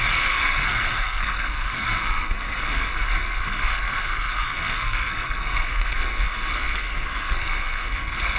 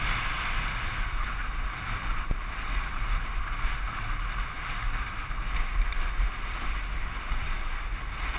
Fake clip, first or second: first